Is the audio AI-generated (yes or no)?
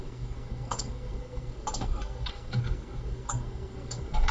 yes